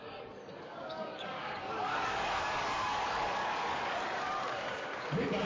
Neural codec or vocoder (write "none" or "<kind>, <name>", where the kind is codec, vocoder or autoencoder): codec, DAC